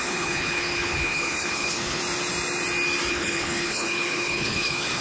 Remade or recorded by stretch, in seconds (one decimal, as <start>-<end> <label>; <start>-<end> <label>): 0.0-2.0 remade; 2.0-3.1 recorded; 3.1-5.0 remade